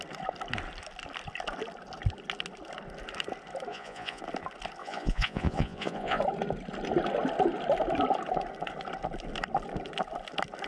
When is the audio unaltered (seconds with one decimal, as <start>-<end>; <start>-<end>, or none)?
0.0-3.7; 4.2-4.8; 6.2-10.7